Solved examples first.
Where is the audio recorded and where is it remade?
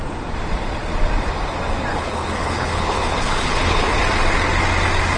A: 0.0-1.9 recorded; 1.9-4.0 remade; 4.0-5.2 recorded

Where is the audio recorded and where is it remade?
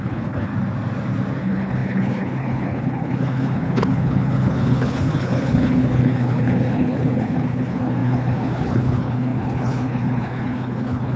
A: 0.0-0.5 remade; 0.5-1.4 recorded; 1.4-11.2 remade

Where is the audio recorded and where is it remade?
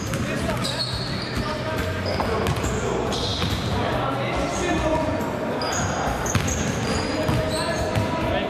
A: 0.0-8.5 recorded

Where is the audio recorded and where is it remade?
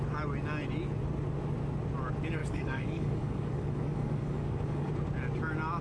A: 0.0-2.4 recorded; 2.4-4.9 remade; 4.9-5.8 recorded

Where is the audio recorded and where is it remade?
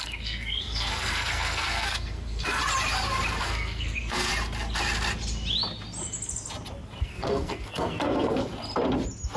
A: 0.0-2.6 remade; 2.6-3.4 recorded; 3.4-4.3 remade; 4.3-7.0 recorded; 7.0-8.4 remade; 8.4-9.4 recorded